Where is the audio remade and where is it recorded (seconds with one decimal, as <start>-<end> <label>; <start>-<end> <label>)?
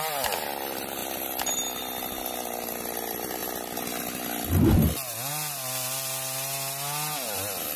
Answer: 0.0-7.8 recorded